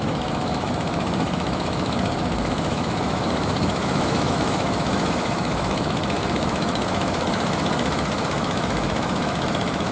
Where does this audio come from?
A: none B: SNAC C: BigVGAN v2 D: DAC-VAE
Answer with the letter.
D